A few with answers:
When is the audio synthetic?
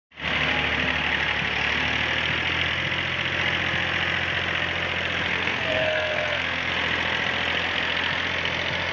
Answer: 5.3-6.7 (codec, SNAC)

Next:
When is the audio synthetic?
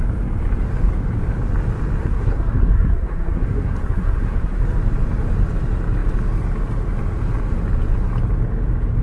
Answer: 2.0-4.6 (codec, SNAC)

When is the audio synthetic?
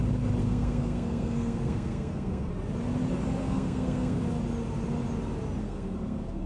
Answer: 0.4-2.5 (codec, SNAC); 3.4-4.2; 5.6-6.5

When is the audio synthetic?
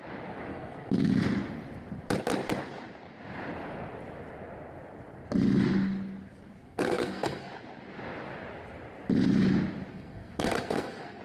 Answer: 0.5-1.1 (codec, SNAC); 6.6-7.5; 9.9-11.2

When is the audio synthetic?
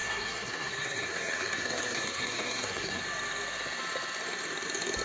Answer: 0.0-3.0 (codec, SNAC)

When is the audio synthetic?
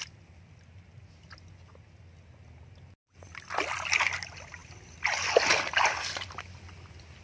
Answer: none